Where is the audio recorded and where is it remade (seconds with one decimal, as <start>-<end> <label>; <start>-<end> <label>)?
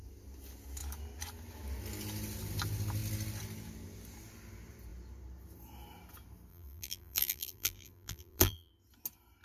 0.0-6.5 recorded; 6.5-8.7 remade; 8.7-9.4 recorded